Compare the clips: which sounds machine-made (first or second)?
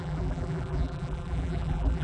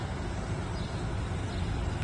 first